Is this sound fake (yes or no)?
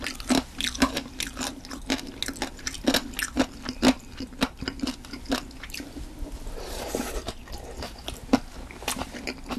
no